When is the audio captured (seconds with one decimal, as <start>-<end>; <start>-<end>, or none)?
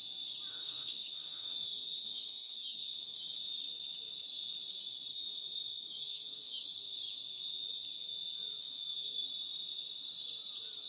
0.0-0.5; 3.2-5.1; 6.7-8.6; 9.2-10.9